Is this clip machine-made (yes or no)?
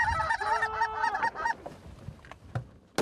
no